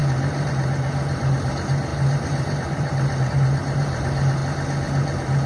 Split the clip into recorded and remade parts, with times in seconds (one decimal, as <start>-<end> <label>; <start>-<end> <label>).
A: 0.0-4.4 remade; 4.4-5.5 recorded